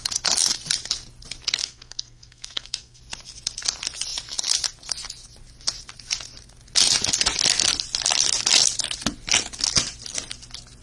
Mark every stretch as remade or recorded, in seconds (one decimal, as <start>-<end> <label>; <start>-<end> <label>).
0.0-1.6 recorded; 1.6-3.0 remade; 3.0-10.8 recorded